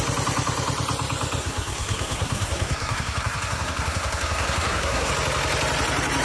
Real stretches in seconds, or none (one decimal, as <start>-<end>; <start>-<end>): 0.0-1.4; 5.1-6.2